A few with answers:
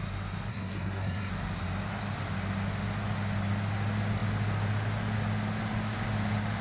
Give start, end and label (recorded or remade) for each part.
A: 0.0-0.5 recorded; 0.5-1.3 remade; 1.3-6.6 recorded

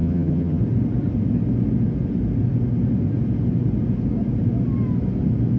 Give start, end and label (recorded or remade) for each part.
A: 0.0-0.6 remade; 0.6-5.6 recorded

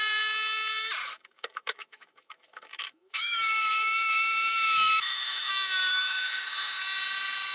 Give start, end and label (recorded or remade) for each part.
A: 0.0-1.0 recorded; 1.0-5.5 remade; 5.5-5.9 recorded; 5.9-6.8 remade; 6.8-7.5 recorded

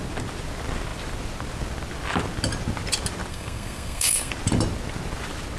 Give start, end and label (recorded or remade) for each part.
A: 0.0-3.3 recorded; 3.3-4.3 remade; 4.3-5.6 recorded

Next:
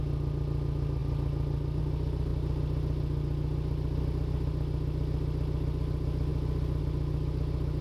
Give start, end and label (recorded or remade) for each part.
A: 0.0-7.8 recorded

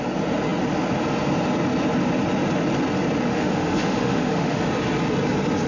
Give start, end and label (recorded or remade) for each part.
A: 0.0-3.3 recorded; 3.3-4.6 remade; 4.6-5.7 recorded

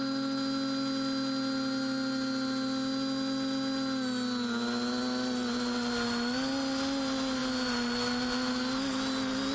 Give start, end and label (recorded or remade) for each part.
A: 0.0-9.5 recorded

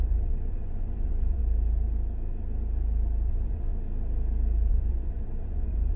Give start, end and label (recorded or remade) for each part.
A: 0.0-1.4 remade; 1.4-3.3 recorded; 3.3-3.7 remade; 3.7-4.7 recorded; 4.7-6.0 remade